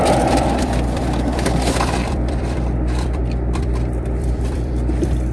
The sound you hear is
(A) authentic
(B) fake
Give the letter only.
B